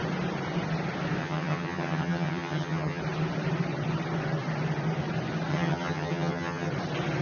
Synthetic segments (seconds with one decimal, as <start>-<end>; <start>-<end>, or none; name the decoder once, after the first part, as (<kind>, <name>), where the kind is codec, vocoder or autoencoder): 1.2-3.0 (vocoder, HiFi-GAN); 5.5-6.7